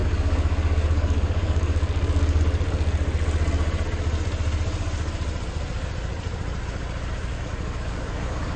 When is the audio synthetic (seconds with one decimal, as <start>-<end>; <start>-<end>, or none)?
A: 0.0-2.4; 7.3-8.6